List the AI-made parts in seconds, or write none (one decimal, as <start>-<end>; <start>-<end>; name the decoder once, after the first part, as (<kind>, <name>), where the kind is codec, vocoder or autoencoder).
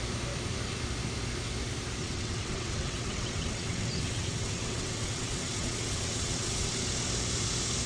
2.0-6.7 (vocoder, WaveNeXt)